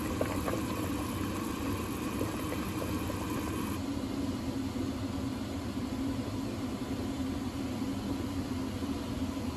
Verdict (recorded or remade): recorded